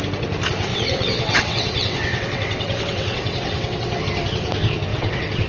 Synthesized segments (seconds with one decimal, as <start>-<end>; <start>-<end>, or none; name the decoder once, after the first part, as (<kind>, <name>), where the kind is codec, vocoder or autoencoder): 0.7-4.0 (vocoder, WaveNeXt); 4.9-5.5